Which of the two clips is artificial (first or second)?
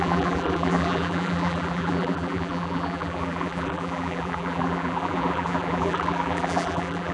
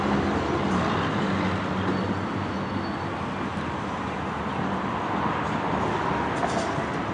first